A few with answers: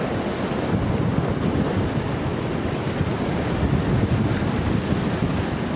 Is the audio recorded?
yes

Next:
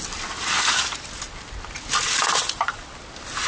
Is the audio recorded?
yes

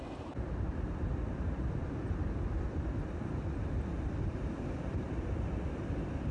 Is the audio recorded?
no